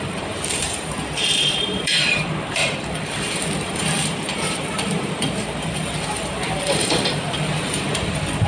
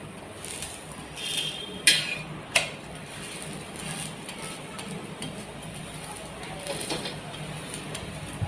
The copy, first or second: first